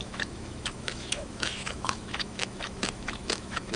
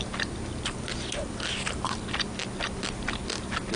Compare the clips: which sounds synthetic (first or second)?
first